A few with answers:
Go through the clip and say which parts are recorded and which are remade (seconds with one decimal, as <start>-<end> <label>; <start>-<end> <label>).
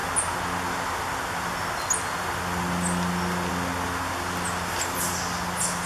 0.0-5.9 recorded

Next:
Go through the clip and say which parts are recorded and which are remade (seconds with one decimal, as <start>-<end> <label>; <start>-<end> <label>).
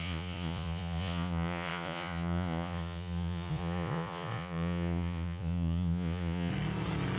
0.0-6.5 remade; 6.5-7.2 recorded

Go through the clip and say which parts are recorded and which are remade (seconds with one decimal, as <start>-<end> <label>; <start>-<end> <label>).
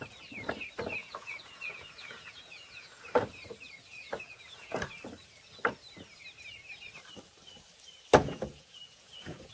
0.0-1.0 recorded; 1.0-3.0 remade; 3.0-3.9 recorded; 3.9-4.8 remade; 4.8-8.2 recorded; 8.2-9.5 remade